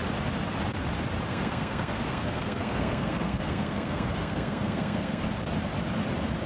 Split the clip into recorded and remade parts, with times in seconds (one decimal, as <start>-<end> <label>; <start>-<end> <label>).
0.0-1.3 recorded; 1.3-5.2 remade; 5.2-6.5 recorded

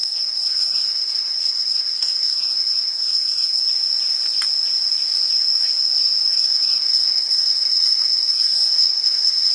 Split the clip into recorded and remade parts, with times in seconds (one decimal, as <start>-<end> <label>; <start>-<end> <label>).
0.0-3.6 remade; 3.6-6.3 recorded; 6.3-9.5 remade